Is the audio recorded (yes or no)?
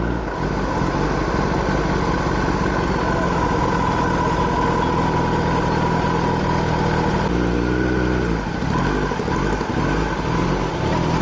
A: yes